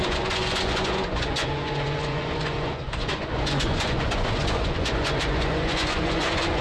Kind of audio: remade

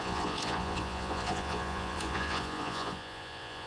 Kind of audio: remade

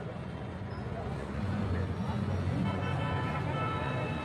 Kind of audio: remade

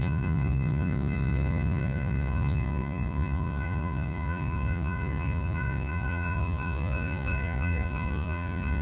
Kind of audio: remade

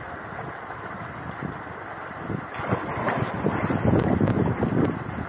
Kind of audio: recorded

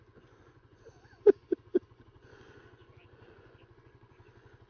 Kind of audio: remade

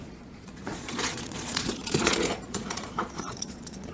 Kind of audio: remade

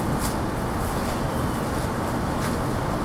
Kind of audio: recorded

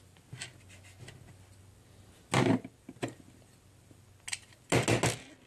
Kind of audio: recorded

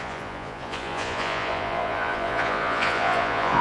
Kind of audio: remade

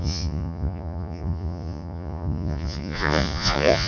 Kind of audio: remade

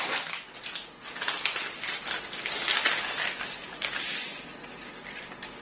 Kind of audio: recorded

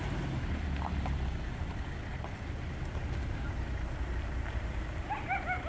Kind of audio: recorded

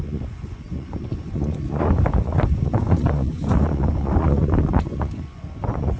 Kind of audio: remade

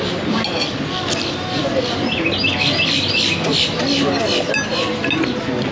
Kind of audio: recorded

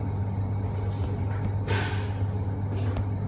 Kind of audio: recorded